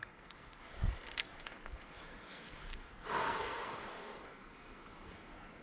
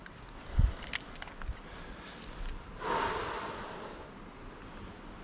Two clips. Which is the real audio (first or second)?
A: second